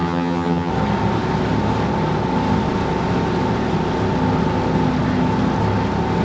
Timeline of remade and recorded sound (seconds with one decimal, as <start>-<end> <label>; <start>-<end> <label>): 0.0-0.7 remade; 0.7-6.2 recorded